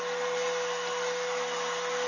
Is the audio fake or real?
real